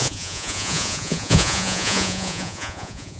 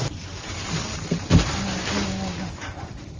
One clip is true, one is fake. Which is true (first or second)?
second